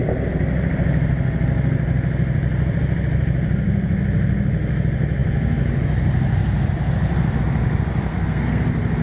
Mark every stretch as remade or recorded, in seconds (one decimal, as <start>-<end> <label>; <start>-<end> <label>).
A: 0.0-8.1 recorded; 8.1-8.6 remade; 8.6-9.0 recorded

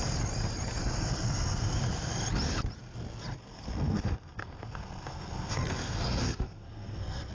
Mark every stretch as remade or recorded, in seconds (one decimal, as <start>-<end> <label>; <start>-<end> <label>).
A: 0.0-0.8 recorded; 0.8-1.8 remade; 1.8-3.4 recorded; 3.4-7.3 remade

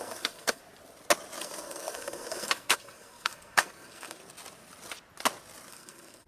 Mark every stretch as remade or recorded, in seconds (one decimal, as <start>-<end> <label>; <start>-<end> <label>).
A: 0.0-0.6 remade; 0.6-1.4 recorded; 1.4-4.2 remade; 4.2-5.7 recorded; 5.7-6.3 remade